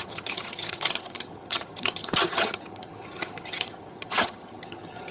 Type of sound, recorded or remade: remade